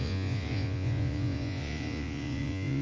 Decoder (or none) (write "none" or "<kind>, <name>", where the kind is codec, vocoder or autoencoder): vocoder, Vocos